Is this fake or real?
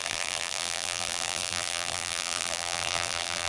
fake